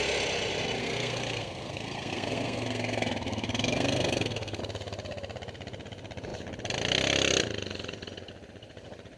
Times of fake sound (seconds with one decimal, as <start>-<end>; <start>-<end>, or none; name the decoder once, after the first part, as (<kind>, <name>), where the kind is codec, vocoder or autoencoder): 0.8-4.6 (codec, SNAC)